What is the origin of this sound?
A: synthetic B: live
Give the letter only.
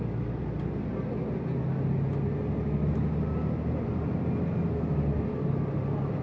B